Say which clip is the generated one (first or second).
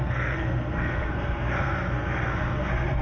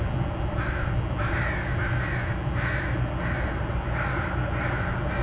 first